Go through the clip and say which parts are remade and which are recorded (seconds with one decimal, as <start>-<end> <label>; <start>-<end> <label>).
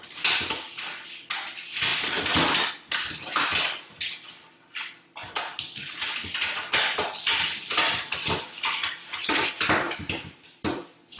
0.0-11.2 recorded